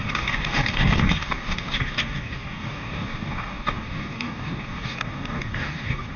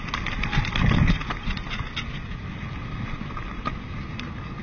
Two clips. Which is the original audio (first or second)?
second